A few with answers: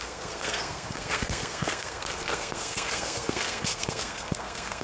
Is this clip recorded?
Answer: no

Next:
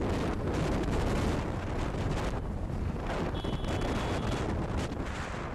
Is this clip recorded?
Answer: yes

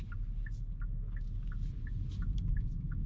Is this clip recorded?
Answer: yes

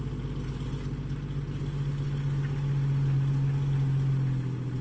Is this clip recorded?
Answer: yes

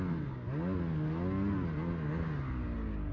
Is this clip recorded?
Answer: yes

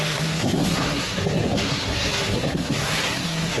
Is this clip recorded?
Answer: no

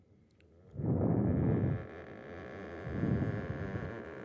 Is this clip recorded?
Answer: yes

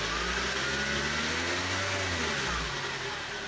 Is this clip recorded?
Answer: yes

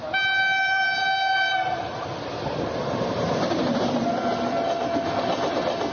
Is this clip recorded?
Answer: yes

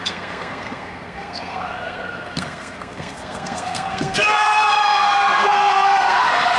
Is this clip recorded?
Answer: no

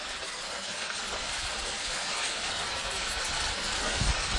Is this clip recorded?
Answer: no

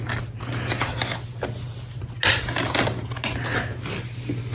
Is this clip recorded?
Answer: yes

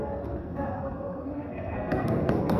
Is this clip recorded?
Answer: no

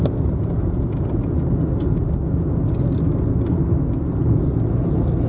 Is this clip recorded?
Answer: yes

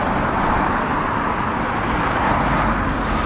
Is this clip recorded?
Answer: yes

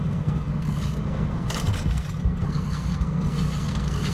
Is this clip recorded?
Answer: no